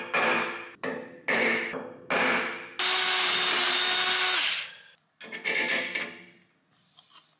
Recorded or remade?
recorded